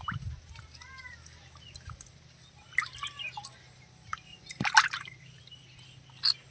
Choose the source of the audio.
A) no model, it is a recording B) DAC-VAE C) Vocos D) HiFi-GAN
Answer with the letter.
A